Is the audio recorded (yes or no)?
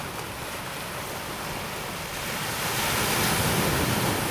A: yes